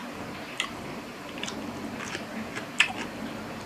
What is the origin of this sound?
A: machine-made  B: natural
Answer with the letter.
B